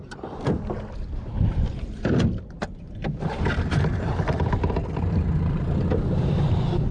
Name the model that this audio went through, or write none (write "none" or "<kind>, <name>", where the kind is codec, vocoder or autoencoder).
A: none